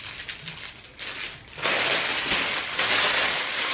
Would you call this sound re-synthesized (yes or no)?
no